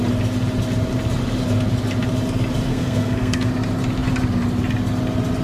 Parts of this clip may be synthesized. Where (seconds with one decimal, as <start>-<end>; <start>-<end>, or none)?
2.7-3.5